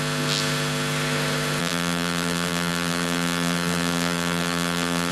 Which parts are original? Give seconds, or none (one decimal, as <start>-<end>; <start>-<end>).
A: 0.0-1.6